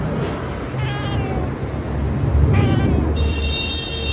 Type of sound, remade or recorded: recorded